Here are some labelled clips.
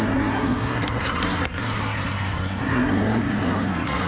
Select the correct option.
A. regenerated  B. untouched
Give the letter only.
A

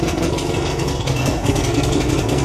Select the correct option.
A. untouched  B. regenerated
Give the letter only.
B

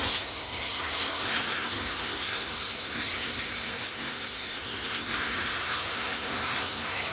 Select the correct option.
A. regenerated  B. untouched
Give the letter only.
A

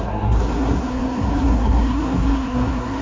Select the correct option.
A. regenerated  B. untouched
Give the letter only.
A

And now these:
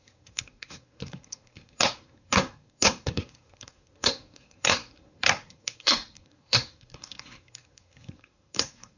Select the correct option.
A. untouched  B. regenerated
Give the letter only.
B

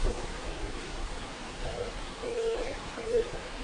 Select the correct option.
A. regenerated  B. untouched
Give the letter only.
A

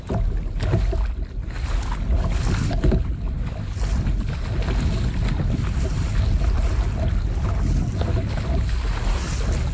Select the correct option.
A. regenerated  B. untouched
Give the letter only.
B